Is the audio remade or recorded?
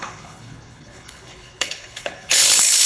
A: remade